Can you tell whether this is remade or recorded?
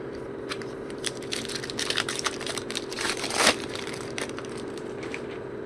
remade